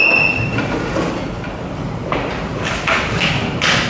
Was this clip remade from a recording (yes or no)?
no